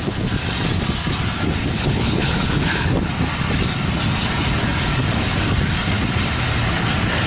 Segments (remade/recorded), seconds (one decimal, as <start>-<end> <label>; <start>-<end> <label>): 0.0-1.6 recorded; 1.6-2.9 remade; 2.9-7.3 recorded